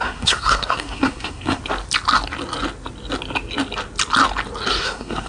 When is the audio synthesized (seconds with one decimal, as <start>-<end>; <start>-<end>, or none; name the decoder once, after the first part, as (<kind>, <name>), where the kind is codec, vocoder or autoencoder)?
0.0-1.6 (codec, SNAC); 4.8-5.3